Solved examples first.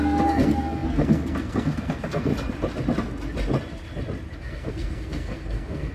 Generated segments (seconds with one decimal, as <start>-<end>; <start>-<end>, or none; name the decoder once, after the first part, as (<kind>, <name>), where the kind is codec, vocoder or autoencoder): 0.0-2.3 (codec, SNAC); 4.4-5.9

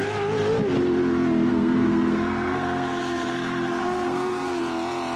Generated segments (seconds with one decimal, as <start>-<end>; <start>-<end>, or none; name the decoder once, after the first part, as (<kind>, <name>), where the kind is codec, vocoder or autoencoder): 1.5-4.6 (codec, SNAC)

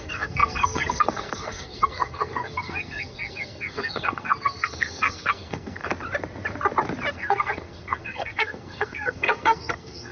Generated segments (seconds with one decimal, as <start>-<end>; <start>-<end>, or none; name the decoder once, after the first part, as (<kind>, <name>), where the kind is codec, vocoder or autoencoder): 0.0-5.9 (codec, SNAC); 7.1-10.1

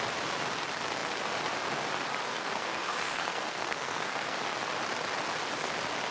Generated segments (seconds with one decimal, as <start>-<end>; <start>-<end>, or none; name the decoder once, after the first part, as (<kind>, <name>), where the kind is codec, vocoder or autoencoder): 2.3-4.4 (codec, SNAC)